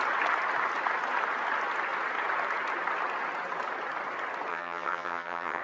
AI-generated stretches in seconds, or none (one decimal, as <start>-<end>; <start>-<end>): 4.5-5.6